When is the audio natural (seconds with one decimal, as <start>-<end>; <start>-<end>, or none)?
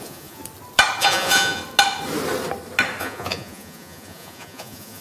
0.4-1.0; 1.6-3.0